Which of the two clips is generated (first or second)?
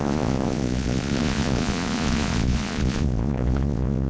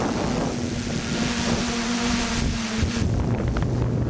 first